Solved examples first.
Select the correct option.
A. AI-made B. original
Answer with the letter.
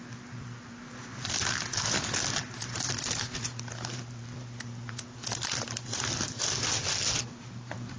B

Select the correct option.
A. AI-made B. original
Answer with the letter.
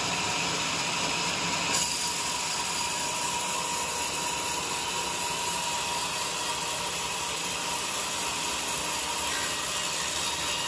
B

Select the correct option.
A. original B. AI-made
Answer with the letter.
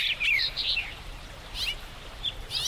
B